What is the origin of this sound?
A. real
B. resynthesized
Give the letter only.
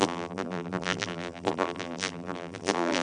B